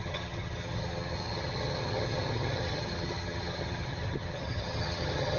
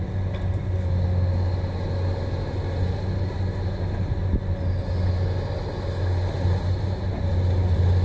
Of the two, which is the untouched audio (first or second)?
second